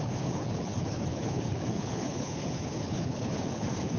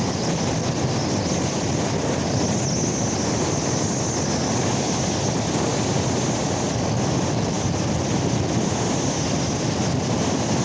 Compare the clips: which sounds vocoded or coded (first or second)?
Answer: first